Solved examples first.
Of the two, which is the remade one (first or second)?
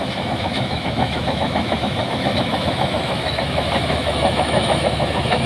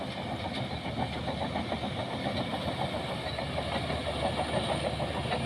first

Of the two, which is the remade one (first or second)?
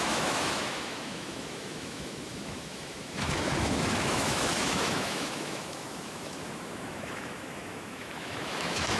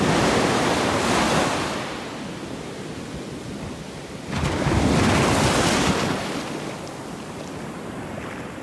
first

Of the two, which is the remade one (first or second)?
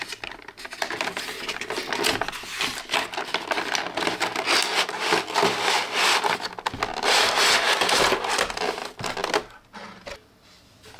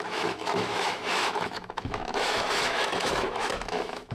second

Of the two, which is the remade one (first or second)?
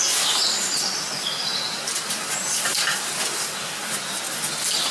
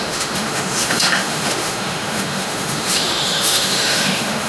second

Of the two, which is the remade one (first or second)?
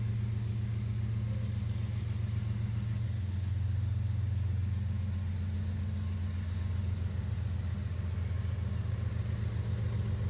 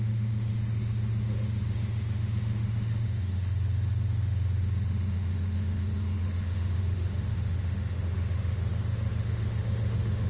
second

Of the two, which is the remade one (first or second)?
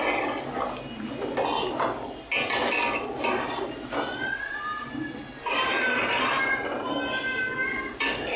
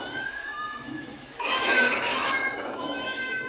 second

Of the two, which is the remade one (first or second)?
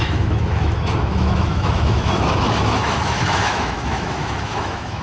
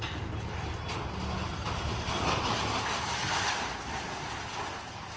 first